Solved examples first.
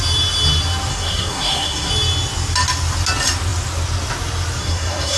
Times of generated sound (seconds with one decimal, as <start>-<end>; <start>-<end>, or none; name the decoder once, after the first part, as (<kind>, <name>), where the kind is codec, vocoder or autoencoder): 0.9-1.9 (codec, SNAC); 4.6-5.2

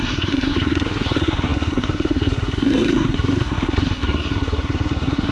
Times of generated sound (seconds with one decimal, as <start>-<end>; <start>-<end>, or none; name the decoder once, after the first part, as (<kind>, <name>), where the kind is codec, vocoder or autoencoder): 0.0-5.3 (codec, SNAC)

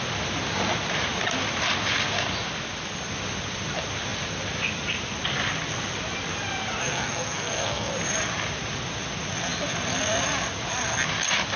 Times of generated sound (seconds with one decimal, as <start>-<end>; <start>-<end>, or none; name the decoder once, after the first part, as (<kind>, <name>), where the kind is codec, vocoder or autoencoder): 6.8-7.9 (codec, SNAC)

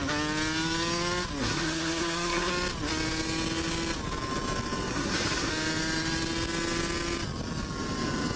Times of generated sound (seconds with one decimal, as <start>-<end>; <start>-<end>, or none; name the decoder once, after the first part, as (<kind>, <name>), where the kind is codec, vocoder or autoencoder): 1.4-2.5 (codec, SNAC); 4.9-5.5

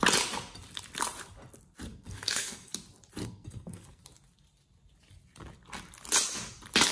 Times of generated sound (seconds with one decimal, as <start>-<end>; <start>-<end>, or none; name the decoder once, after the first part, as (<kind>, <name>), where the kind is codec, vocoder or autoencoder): 1.9-2.7 (codec, SNAC); 3.2-4.0